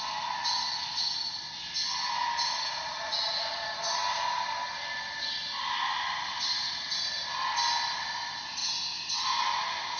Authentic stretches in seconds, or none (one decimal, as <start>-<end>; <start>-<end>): 0.0-10.0